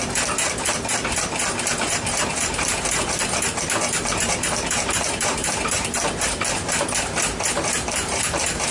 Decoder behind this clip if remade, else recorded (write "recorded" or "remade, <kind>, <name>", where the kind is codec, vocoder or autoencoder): remade, vocoder, BigVGAN v2